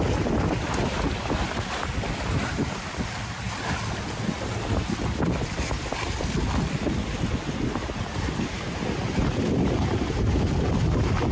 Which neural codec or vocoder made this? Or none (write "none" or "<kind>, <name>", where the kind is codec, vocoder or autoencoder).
none